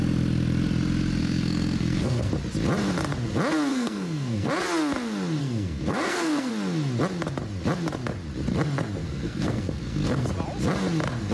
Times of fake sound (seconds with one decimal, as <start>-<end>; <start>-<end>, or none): 1.2-2.3; 3.7-4.5; 5.4-6.5; 9.0-10.3